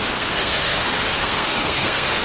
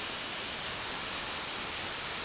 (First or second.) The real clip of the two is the second